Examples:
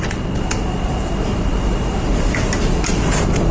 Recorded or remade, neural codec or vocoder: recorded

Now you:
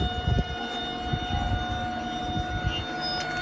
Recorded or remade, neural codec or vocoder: recorded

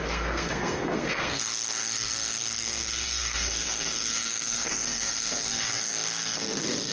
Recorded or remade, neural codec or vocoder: remade, codec, SNAC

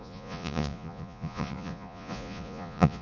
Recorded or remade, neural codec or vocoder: remade, vocoder, Vocos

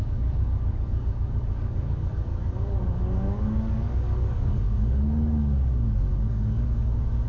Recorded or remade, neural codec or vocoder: remade, codec, DAC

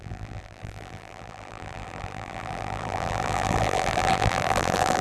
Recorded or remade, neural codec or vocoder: remade, vocoder, BigVGAN v2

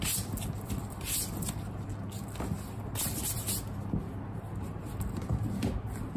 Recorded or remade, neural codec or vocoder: recorded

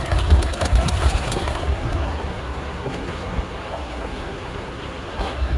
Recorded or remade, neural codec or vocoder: remade, codec, SNAC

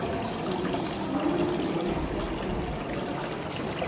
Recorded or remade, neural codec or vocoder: recorded